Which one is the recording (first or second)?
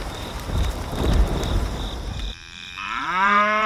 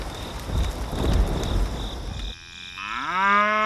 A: second